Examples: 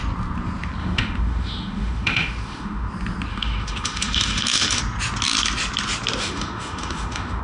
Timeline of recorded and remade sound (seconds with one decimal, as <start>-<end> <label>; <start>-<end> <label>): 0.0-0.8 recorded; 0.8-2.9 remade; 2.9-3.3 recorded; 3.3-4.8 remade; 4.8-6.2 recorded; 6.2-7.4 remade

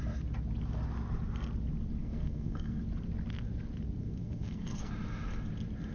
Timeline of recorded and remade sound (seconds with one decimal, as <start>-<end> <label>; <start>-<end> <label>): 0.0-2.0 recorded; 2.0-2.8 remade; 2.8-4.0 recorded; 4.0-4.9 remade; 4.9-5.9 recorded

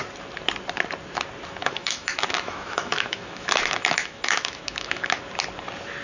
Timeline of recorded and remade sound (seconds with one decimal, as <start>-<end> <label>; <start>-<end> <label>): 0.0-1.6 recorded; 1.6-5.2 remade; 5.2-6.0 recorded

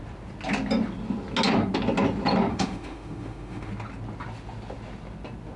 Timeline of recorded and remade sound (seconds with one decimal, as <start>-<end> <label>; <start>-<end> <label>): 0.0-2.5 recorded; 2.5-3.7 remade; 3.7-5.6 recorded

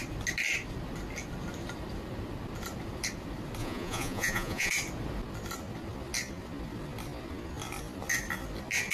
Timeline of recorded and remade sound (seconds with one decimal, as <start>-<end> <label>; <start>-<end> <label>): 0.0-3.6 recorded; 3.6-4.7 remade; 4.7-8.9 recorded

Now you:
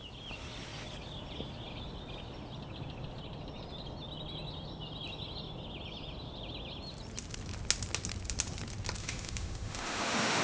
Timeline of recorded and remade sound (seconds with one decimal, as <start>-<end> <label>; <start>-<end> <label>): 0.0-9.0 recorded; 9.0-10.4 remade

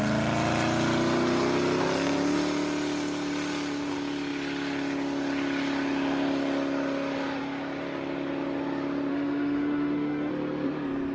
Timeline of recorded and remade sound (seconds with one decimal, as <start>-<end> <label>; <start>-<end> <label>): 0.0-9.1 recorded; 9.1-10.3 remade; 10.3-11.1 recorded

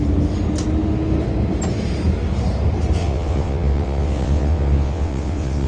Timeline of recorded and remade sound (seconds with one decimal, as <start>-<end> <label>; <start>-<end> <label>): 0.0-3.0 recorded; 3.0-5.7 remade